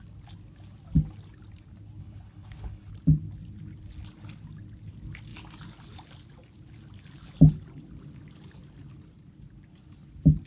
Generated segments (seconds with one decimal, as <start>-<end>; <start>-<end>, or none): 2.0-2.9